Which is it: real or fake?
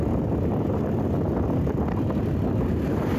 real